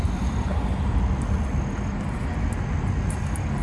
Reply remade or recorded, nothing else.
recorded